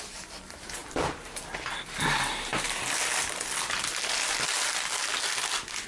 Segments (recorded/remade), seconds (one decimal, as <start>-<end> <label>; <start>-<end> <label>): 0.0-0.8 recorded; 0.8-1.4 remade; 1.4-5.9 recorded